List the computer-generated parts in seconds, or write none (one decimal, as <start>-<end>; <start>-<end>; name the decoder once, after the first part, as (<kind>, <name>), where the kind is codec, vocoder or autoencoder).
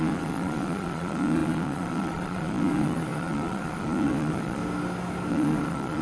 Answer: 0.0-4.6 (vocoder, Vocos); 5.3-6.0